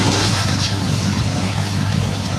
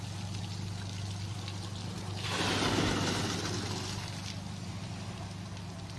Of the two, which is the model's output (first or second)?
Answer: first